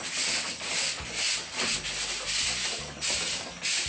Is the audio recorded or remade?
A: recorded